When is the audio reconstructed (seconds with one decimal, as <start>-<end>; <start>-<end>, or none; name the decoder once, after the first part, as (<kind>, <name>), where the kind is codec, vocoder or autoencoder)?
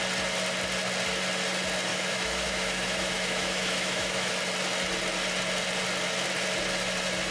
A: 1.9-4.3 (autoencoder, DAC-VAE)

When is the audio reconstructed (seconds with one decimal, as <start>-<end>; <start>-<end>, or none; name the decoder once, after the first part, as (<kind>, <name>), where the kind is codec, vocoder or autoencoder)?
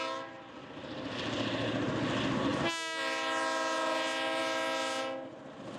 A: none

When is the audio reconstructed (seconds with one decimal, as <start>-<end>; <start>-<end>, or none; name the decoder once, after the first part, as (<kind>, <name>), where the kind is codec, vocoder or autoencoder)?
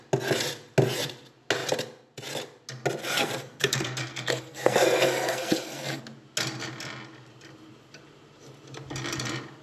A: 3.0-6.0 (codec, SNAC)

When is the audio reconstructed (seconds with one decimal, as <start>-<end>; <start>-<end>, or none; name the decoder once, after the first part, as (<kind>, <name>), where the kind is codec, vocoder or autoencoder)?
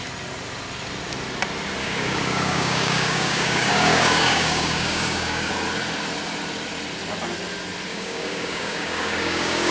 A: 1.8-5.5 (codec, DAC); 7.9-9.7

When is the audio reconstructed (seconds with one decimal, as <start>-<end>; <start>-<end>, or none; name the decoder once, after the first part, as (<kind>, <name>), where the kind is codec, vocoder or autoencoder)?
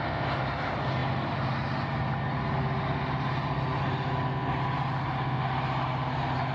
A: none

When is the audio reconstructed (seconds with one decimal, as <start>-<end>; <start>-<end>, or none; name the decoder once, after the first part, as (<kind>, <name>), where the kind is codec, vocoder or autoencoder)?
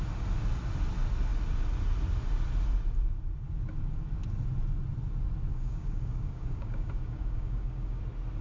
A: 5.5-8.0 (codec, DAC)